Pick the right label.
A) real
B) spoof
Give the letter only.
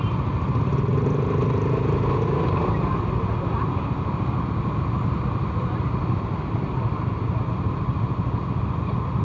A